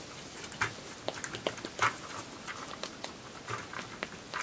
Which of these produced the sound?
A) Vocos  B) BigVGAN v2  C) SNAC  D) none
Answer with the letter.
D